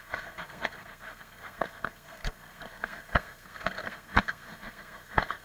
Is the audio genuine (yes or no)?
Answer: no